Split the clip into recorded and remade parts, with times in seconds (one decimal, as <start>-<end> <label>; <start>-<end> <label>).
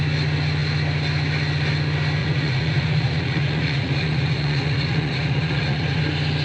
0.0-2.2 recorded; 2.2-6.0 remade; 6.0-6.4 recorded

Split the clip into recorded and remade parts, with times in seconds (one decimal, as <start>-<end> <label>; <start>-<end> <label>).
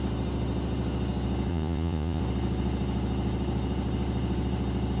0.0-1.5 recorded; 1.5-2.2 remade; 2.2-5.0 recorded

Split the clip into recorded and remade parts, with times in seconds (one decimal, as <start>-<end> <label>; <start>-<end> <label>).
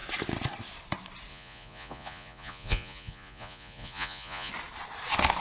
0.0-1.3 recorded; 1.3-4.5 remade; 4.5-5.4 recorded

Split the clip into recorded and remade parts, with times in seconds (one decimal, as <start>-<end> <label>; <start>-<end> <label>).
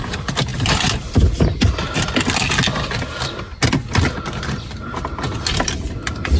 0.0-6.4 recorded